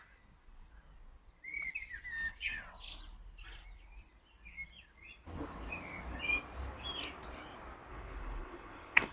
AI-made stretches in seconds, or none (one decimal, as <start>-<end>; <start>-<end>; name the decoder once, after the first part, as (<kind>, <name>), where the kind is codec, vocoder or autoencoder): 7.9-9.1 (codec, HILCodec)